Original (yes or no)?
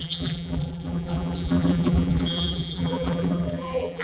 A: no